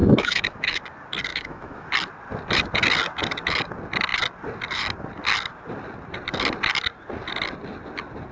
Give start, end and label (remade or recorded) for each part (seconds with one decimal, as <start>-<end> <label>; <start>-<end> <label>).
0.0-0.8 remade; 0.8-1.3 recorded; 1.3-1.9 remade; 1.9-8.3 recorded